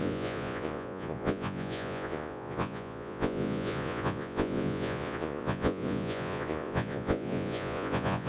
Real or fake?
fake